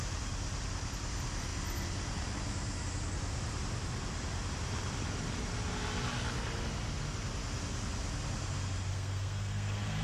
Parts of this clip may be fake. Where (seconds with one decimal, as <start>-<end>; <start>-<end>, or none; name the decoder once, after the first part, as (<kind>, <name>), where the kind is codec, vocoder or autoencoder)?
8.9-10.0 (codec, SNAC)